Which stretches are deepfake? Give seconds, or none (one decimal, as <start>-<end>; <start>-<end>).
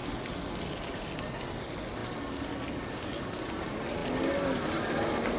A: none